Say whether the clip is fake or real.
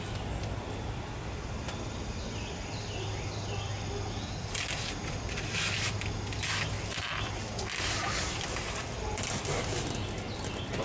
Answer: real